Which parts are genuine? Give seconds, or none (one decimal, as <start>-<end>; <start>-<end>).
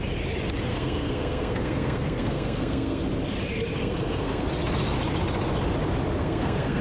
0.0-0.7; 3.0-3.8; 4.5-6.2